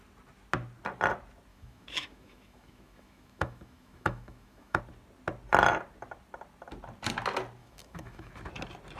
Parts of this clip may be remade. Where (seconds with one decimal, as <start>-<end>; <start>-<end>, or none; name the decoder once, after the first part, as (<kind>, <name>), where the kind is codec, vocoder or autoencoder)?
1.5-4.8 (autoencoder, DAC-VAE); 7.6-8.3